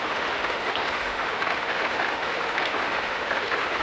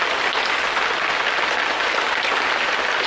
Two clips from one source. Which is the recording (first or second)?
second